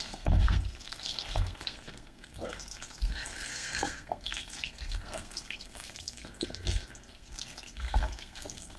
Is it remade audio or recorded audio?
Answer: remade